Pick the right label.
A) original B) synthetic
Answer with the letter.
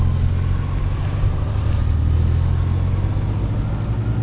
A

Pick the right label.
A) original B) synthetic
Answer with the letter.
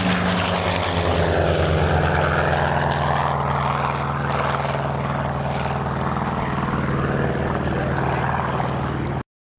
A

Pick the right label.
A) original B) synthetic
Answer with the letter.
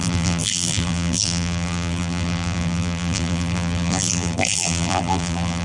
B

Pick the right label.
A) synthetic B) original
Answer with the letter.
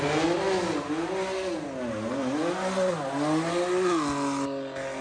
B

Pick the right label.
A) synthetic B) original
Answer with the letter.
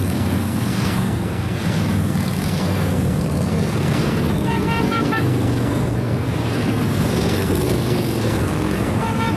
A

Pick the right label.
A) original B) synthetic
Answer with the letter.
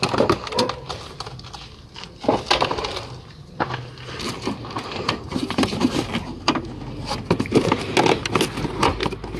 A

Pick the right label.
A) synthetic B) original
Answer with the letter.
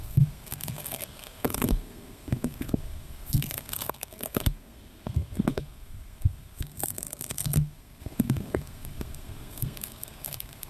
A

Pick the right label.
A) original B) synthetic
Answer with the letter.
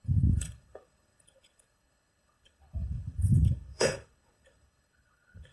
B